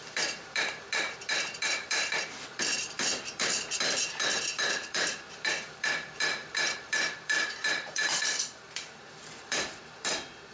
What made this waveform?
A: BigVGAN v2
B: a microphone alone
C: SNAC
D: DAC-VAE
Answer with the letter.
A